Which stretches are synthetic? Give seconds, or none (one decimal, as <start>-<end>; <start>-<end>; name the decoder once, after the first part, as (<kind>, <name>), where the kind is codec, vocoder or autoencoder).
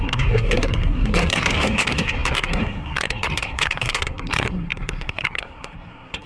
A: 0.0-6.3 (codec, SNAC)